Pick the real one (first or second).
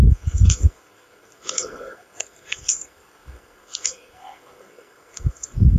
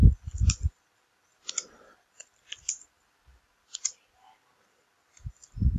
second